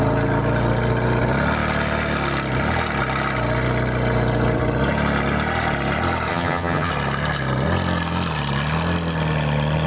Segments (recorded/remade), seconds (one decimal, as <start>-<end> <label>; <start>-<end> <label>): 0.0-6.3 recorded; 6.3-6.9 remade; 6.9-9.9 recorded

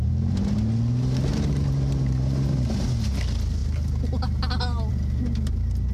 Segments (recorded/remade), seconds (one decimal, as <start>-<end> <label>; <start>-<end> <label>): 0.0-5.9 recorded